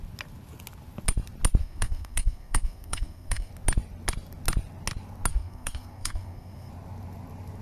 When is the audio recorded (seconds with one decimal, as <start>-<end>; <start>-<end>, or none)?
0.0-1.6; 3.5-5.3; 6.7-7.6